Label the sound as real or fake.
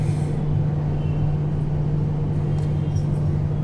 real